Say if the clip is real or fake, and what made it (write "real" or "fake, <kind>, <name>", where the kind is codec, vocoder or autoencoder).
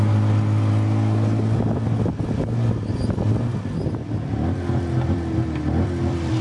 real